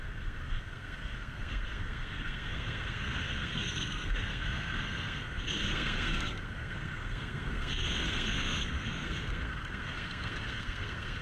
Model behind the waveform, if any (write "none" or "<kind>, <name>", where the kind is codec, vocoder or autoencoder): codec, SNAC